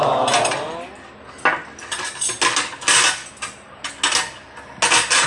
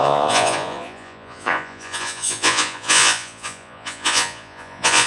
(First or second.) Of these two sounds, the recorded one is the first